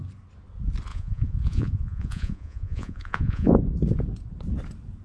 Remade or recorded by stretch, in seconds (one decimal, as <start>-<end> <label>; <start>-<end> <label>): 0.0-0.9 recorded; 0.9-3.6 remade; 3.6-5.0 recorded